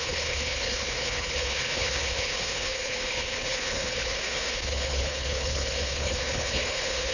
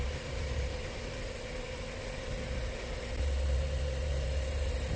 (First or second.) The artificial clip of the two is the first